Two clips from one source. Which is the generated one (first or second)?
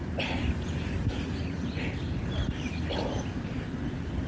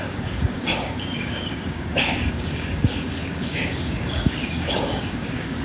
second